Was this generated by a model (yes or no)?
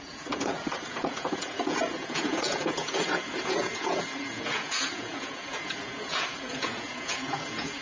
yes